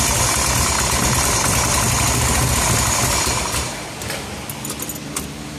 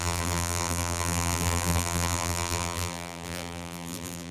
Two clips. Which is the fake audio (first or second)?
second